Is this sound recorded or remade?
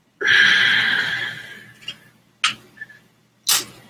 recorded